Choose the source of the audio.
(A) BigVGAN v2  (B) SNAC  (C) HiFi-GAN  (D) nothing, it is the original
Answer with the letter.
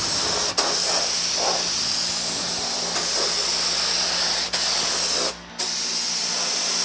D